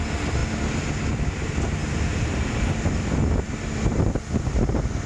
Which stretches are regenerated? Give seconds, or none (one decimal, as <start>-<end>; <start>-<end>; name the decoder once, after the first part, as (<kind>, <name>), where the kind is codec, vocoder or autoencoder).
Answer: none